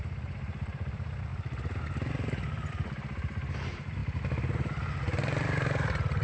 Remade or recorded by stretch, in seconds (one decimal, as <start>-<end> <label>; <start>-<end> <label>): 0.0-1.3 remade; 1.3-2.7 recorded; 2.7-4.0 remade; 4.0-4.9 recorded; 4.9-6.2 remade